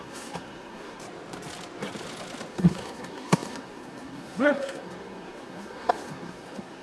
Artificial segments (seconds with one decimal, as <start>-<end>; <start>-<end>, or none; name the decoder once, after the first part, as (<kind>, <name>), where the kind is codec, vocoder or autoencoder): 0.0-1.0 (codec, SNAC); 2.5-6.8